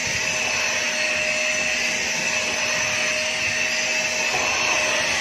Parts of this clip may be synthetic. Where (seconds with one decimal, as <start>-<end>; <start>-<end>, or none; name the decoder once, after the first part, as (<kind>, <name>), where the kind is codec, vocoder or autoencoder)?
none